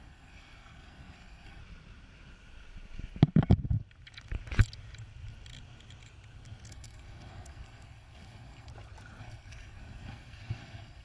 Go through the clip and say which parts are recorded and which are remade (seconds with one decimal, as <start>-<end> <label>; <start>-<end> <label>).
0.0-1.6 remade; 1.6-6.7 recorded; 6.7-8.7 remade; 8.7-9.2 recorded; 9.2-11.0 remade